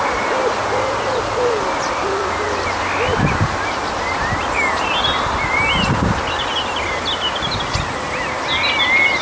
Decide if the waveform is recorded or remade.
recorded